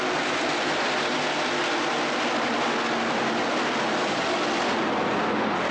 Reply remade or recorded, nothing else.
recorded